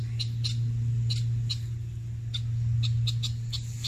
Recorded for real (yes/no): yes